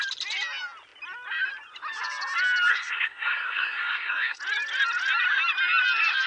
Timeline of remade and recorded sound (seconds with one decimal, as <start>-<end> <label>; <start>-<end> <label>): 0.0-2.7 recorded; 2.7-4.4 remade; 4.4-6.3 recorded